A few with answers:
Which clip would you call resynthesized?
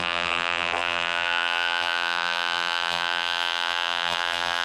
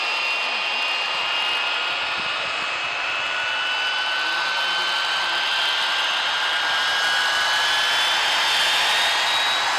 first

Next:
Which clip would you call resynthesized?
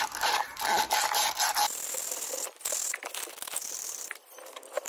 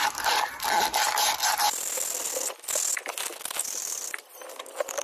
first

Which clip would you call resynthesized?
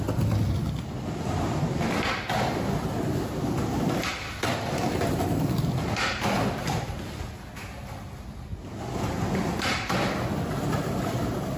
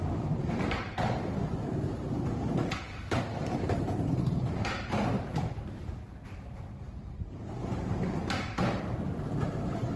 second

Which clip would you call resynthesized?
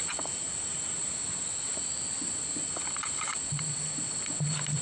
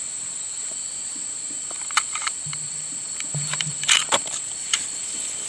second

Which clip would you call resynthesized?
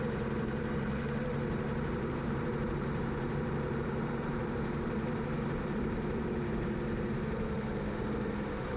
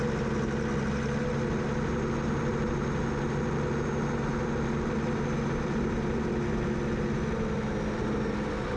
first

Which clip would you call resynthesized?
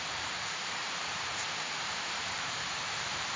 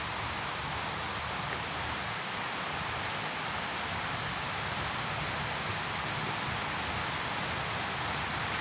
first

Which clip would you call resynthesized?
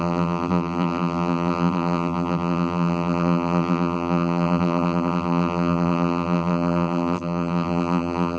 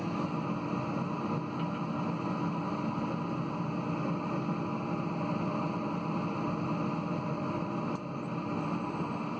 first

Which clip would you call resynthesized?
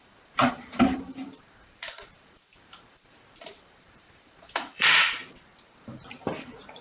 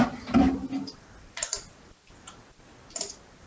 first